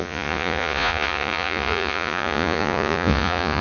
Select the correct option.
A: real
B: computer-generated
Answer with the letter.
B